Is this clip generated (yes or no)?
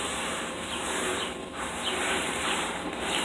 yes